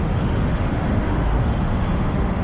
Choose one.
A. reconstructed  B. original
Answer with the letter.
A